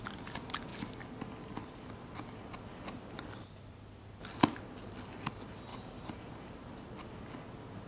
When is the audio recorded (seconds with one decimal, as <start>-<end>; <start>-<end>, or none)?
0.0-5.7; 6.7-7.9